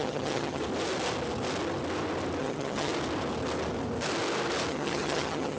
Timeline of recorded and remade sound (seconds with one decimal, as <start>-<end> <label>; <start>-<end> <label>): 0.0-0.6 remade; 0.6-2.4 recorded; 2.4-2.9 remade; 2.9-4.7 recorded; 4.7-5.6 remade